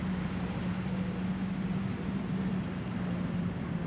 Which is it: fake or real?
real